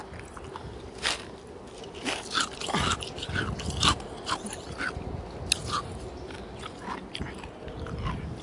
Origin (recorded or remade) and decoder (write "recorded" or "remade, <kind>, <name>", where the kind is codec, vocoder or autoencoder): recorded